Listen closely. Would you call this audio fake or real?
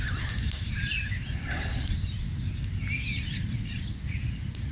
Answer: real